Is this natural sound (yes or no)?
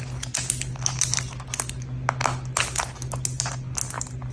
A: yes